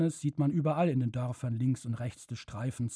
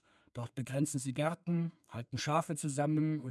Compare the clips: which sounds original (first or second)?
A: first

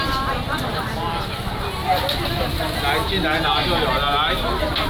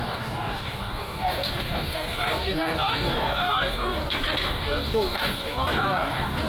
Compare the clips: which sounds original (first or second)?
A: first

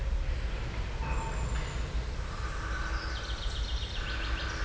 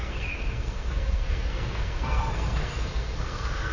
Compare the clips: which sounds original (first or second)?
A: first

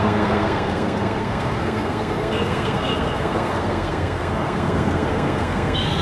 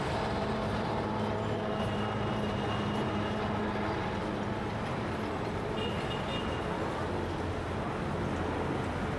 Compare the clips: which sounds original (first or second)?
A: second